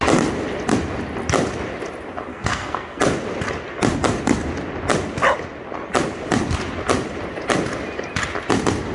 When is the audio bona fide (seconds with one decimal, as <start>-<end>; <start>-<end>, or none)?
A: 0.0-2.3; 3.0-8.9